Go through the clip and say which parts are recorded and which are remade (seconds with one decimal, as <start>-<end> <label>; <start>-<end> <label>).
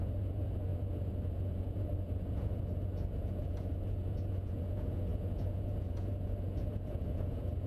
0.0-7.7 remade